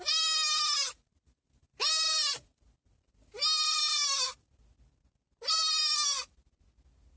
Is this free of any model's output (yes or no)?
yes